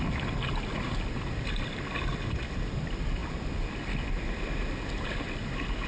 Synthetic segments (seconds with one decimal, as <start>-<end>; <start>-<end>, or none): none